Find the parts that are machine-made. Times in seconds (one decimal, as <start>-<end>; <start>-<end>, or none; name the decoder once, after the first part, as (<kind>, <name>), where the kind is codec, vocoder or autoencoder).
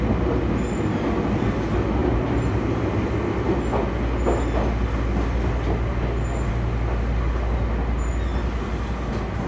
none